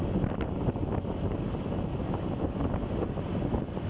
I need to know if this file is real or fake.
real